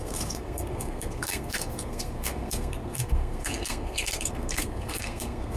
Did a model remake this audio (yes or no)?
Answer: yes